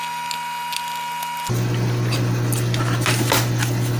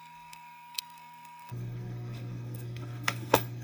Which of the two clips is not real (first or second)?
second